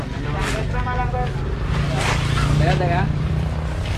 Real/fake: real